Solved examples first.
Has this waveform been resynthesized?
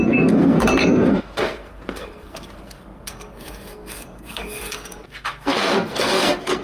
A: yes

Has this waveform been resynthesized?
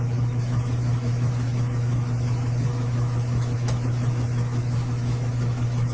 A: yes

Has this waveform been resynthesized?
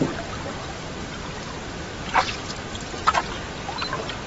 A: no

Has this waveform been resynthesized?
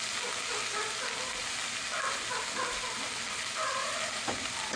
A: no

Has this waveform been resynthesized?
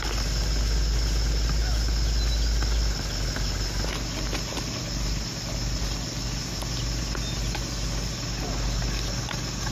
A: no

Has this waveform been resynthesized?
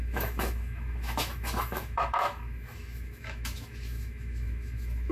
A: yes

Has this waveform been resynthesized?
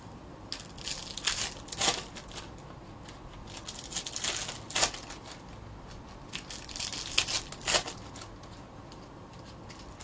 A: no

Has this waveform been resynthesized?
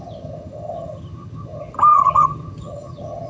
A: yes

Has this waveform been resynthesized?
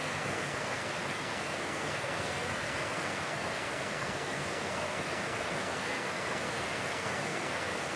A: yes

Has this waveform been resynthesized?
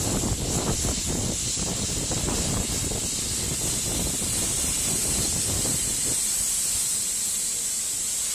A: no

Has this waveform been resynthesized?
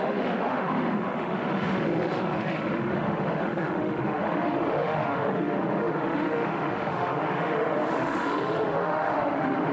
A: yes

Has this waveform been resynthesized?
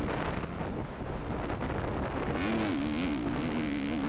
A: no